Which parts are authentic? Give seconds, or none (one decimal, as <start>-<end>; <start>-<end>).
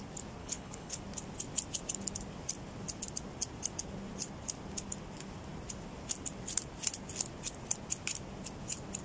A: 0.0-0.4; 1.0-9.0